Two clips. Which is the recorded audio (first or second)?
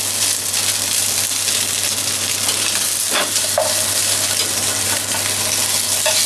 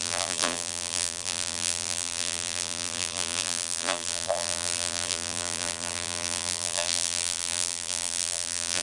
first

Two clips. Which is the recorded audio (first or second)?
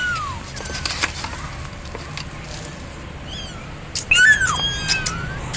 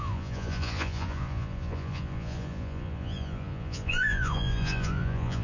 first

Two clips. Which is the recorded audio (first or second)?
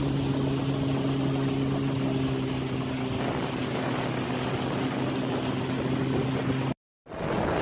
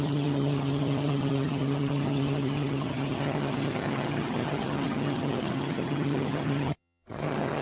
first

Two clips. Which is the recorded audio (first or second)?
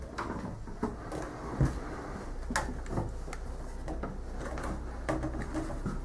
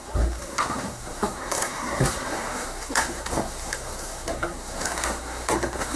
first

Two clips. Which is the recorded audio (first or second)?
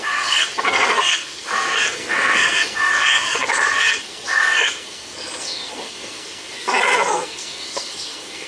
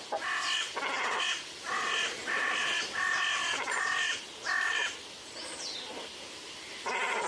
second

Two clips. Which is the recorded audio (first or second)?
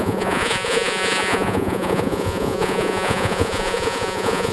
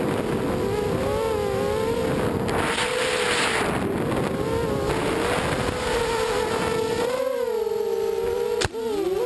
second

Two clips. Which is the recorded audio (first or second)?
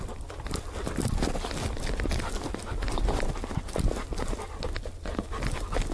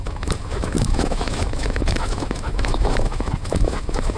first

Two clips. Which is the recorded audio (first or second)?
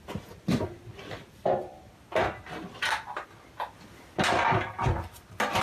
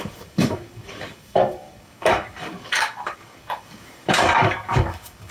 first